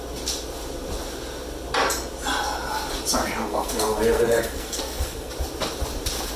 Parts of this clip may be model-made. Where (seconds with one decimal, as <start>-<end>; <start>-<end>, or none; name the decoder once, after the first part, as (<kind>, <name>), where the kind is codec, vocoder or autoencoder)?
3.4-5.3 (codec, SNAC)

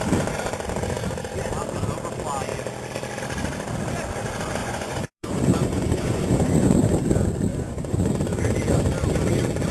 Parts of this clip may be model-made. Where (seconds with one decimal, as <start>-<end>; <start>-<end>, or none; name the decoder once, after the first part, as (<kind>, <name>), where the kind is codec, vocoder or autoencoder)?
4.6-6.9 (vocoder, Vocos); 7.5-8.1